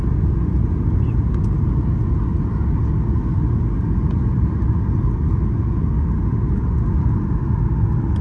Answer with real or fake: real